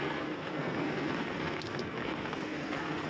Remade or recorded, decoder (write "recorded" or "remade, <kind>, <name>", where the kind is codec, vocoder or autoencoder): remade, codec, SNAC